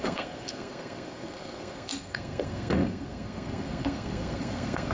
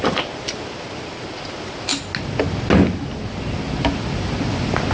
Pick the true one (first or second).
second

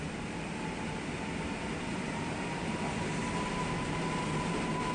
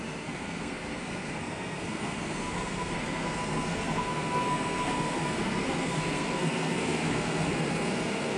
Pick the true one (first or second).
first